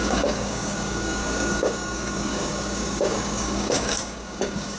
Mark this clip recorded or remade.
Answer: remade